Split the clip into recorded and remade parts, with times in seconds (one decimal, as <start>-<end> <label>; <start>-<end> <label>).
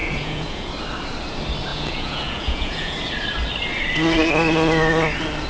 0.0-0.7 remade; 0.7-1.7 recorded; 1.7-3.1 remade; 3.1-5.5 recorded